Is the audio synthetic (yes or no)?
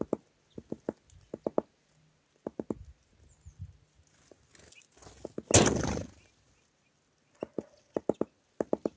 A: no